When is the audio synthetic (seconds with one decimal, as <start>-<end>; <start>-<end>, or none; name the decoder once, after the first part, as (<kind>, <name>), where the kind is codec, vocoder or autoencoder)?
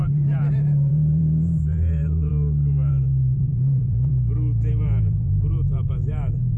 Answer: 0.0-2.3 (vocoder, BigVGAN v2); 2.9-4.1; 4.7-6.6